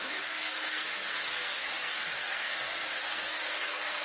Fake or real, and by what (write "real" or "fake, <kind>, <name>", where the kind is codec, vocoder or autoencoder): fake, codec, SNAC